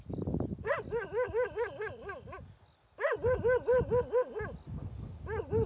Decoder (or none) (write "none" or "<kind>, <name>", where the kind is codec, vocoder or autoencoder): none